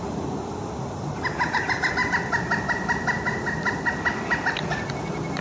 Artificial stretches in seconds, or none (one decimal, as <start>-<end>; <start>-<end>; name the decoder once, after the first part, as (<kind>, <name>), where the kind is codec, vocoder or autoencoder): none